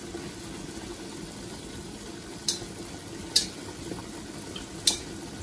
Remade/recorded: recorded